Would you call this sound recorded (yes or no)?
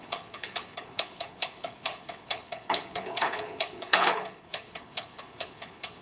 no